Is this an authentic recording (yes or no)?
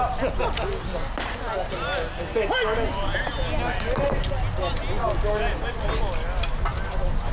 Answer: yes